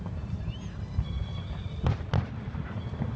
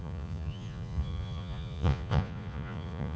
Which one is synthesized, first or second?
second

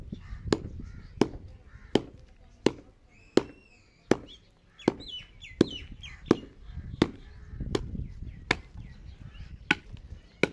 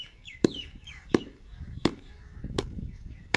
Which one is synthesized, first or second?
second